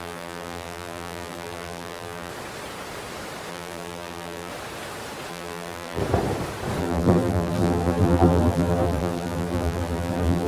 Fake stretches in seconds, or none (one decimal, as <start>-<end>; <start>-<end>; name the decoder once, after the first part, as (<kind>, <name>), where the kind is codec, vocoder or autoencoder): 0.0-2.3 (vocoder, BigVGAN v2); 3.5-4.5; 5.3-6.0; 6.8-10.5

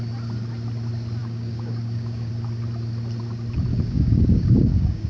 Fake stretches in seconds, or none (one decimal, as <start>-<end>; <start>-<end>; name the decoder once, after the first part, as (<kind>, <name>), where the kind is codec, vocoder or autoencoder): 1.2-2.3 (codec, DAC); 3.7-5.1

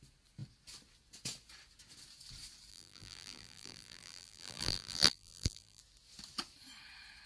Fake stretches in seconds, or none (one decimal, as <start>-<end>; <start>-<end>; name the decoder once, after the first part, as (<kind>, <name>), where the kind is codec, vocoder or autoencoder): 2.7-5.8 (vocoder, BigVGAN v2)

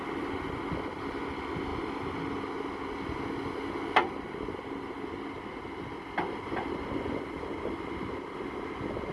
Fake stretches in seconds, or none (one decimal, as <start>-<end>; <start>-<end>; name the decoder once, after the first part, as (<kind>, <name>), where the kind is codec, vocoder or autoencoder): none

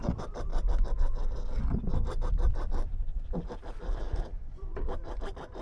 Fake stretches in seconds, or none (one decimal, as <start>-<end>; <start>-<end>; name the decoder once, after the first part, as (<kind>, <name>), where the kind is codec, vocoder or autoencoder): 0.0-0.5 (vocoder, BigVGAN v2); 3.9-5.6

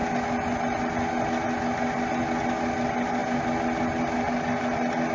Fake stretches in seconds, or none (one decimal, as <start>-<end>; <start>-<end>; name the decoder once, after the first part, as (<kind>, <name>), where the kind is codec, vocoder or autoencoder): none

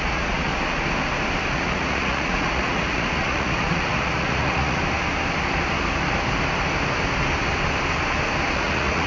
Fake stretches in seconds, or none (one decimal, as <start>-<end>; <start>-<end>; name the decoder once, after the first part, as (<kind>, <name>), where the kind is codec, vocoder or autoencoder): 0.0-0.5 (vocoder, Vocos); 1.5-4.8; 8.5-9.1

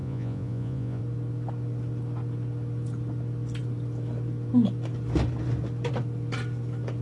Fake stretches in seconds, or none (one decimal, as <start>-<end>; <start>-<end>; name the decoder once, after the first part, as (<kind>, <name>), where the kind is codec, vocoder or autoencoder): 0.0-1.0 (vocoder, Vocos)